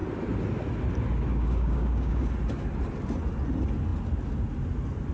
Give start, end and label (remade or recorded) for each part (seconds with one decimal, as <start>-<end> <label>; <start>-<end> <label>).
0.0-1.3 recorded; 1.3-2.3 remade; 2.3-5.1 recorded